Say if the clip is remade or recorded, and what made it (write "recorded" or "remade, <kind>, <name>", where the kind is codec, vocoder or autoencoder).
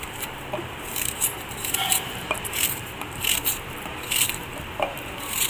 remade, vocoder, BigVGAN v2